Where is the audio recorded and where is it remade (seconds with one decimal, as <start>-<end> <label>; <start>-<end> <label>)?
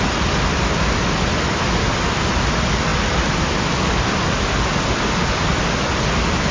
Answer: 0.0-6.5 recorded